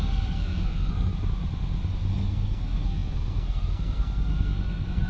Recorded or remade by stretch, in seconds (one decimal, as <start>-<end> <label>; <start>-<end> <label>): 0.0-1.1 remade; 1.1-2.1 recorded; 2.1-5.1 remade